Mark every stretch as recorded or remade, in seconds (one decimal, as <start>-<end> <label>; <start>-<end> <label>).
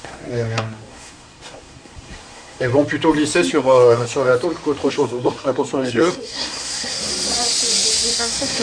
0.0-2.7 remade; 2.7-3.5 recorded; 3.5-4.3 remade; 4.3-4.9 recorded; 4.9-7.1 remade; 7.1-8.2 recorded; 8.2-8.6 remade